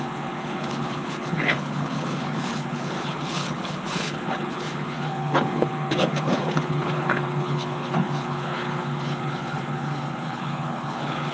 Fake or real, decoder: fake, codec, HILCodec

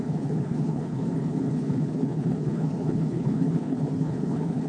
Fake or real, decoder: fake, codec, HILCodec